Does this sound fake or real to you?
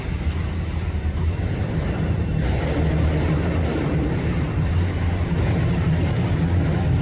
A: fake